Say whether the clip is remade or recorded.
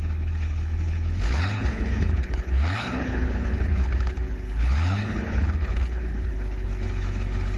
remade